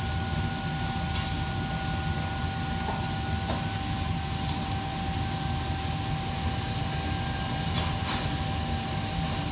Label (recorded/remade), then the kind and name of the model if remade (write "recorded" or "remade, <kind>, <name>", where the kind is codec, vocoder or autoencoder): recorded